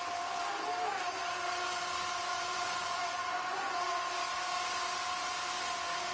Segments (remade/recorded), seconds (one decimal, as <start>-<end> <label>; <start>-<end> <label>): 0.0-2.3 recorded; 2.3-4.1 remade; 4.1-6.1 recorded